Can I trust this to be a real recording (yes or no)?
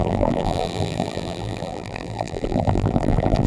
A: no